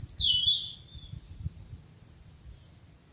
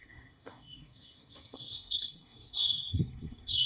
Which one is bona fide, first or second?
first